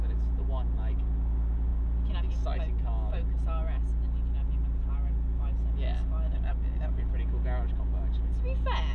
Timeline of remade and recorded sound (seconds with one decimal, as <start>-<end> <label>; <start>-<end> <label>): 0.0-8.9 recorded